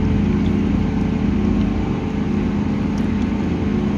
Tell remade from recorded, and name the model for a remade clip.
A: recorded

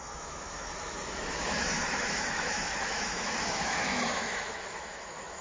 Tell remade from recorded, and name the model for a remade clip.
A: remade, autoencoder, DAC-VAE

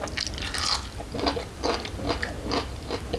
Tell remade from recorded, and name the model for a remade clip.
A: recorded